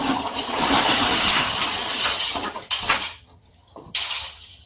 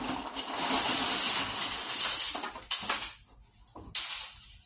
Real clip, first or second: second